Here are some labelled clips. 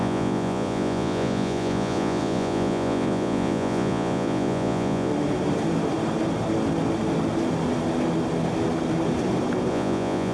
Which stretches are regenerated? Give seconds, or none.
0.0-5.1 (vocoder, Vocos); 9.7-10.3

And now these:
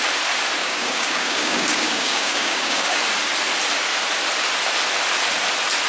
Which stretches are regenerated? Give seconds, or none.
0.6-3.0 (codec, DAC)

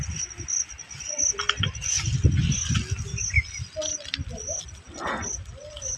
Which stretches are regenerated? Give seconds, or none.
none

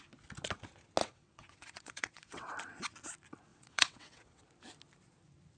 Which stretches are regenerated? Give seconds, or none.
1.0-2.5 (vocoder, WaveNeXt); 3.5-4.4

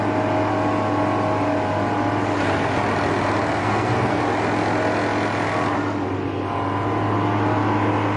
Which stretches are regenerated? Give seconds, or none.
3.6-4.2 (codec, SNAC)

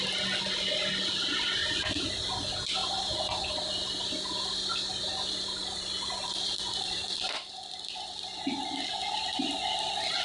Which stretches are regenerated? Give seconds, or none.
1.6-2.2 (vocoder, BigVGAN v2); 2.8-3.7; 5.6-9.5